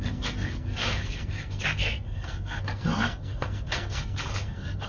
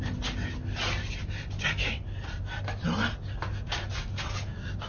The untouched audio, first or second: second